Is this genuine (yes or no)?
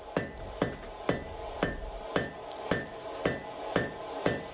yes